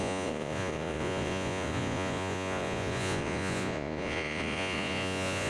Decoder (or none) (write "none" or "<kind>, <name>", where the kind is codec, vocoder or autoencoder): vocoder, Vocos